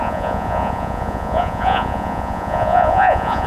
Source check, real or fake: fake